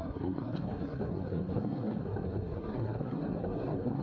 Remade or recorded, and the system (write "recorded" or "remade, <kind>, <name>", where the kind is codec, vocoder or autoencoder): remade, codec, SNAC